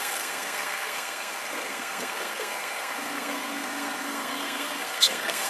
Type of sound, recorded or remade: remade